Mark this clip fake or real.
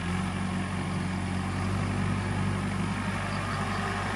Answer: real